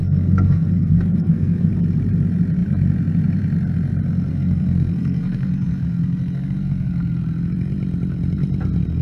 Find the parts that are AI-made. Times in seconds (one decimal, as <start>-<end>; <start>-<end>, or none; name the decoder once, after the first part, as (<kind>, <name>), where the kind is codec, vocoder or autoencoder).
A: 0.0-1.7 (codec, SNAC); 4.3-7.2